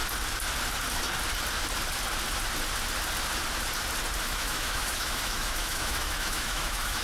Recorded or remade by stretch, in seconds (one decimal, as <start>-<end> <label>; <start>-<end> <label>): 0.0-4.2 recorded; 4.2-7.0 remade